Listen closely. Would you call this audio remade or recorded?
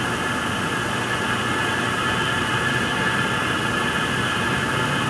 recorded